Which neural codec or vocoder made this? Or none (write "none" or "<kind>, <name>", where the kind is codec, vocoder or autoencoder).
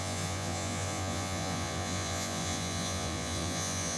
vocoder, Vocos